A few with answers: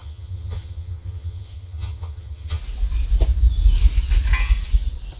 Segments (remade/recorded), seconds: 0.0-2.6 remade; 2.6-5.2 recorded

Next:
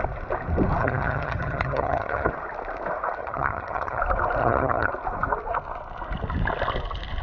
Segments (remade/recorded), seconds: 0.0-0.8 recorded; 0.8-2.3 remade; 2.3-3.2 recorded; 3.2-4.0 remade; 4.0-4.4 recorded; 4.4-4.9 remade; 4.9-7.2 recorded

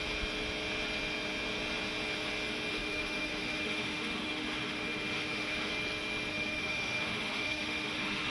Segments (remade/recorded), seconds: 0.0-2.7 recorded; 2.7-5.7 remade; 5.7-6.3 recorded; 6.3-8.3 remade

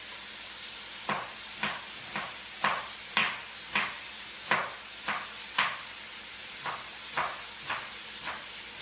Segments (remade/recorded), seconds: 0.0-8.8 recorded

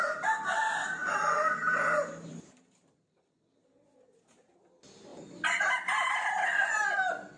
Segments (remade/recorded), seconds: 0.0-1.0 recorded; 1.0-3.8 remade; 3.8-5.1 recorded; 5.1-6.2 remade; 6.2-7.4 recorded